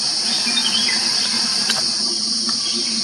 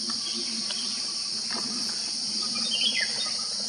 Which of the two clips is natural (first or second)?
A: first